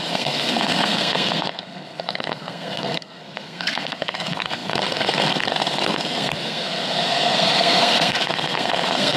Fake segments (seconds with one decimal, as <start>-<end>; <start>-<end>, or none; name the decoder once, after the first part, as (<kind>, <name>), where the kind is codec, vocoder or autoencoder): 0.0-9.2 (codec, SNAC)